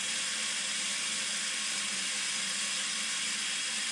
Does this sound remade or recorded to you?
recorded